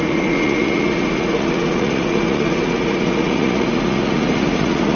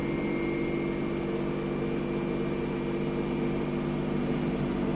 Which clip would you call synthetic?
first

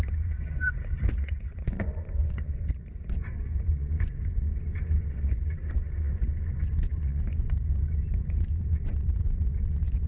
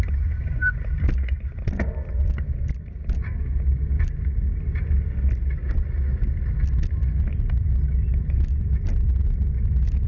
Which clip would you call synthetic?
first